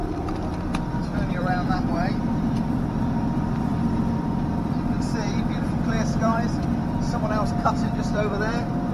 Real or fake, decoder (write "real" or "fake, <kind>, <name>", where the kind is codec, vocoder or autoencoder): fake, vocoder, BigVGAN v2